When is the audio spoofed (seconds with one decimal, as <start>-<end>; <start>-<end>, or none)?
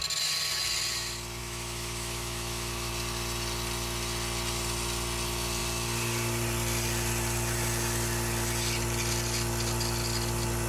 1.4-2.9